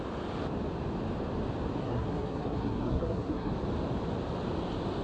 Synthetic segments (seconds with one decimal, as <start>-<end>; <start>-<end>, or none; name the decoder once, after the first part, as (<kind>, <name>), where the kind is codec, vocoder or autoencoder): 1.8-3.5 (codec, SNAC)